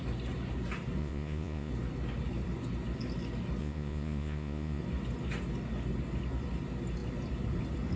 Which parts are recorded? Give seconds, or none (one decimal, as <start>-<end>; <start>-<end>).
0.0-1.0; 1.7-3.6; 4.8-8.0